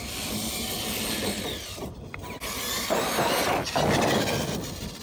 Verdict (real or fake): real